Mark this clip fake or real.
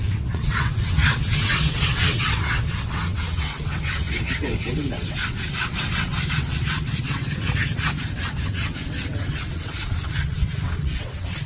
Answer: fake